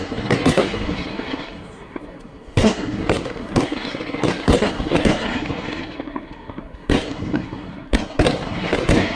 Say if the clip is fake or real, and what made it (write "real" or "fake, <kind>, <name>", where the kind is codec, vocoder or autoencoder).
fake, codec, SNAC